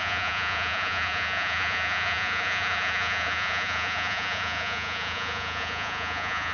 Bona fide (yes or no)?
no